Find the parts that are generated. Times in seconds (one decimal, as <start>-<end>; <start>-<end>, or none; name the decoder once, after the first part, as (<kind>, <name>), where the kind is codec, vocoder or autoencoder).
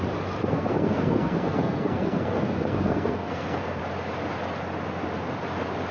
0.4-3.8 (codec, SNAC)